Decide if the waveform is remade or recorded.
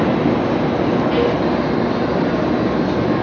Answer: recorded